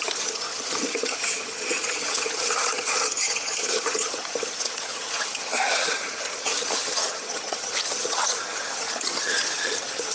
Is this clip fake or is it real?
fake